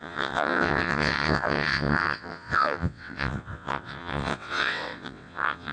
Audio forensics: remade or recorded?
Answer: remade